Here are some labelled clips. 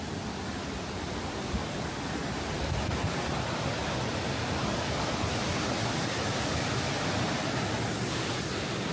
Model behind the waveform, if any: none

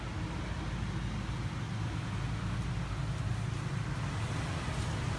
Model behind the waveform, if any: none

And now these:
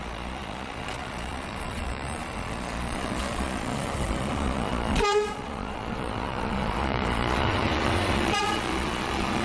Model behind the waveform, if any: vocoder, Vocos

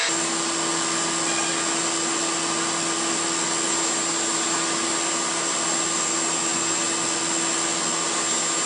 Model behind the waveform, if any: none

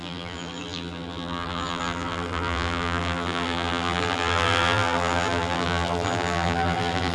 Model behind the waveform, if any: vocoder, BigVGAN v2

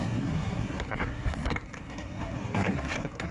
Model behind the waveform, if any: codec, SNAC